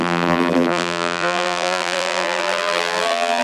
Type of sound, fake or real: fake